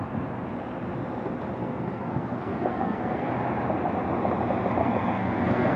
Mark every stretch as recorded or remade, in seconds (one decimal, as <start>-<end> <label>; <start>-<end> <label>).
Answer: 0.0-1.6 recorded; 1.6-3.3 remade; 3.3-4.8 recorded; 4.8-5.8 remade